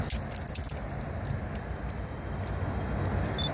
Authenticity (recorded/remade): recorded